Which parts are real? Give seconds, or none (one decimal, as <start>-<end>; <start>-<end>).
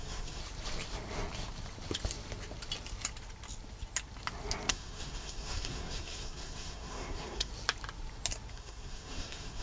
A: 0.4-4.7; 7.5-8.5